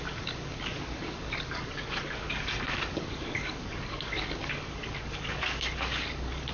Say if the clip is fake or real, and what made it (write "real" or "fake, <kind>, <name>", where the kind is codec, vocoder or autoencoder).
fake, codec, DAC